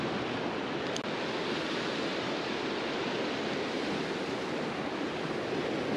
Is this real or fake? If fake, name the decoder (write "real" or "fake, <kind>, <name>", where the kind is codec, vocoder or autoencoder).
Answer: real